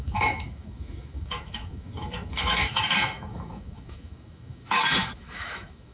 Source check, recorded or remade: remade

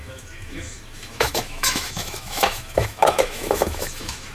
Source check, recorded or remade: remade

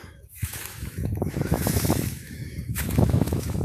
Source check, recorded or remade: remade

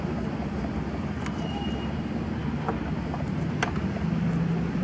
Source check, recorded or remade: recorded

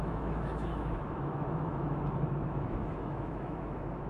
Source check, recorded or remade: remade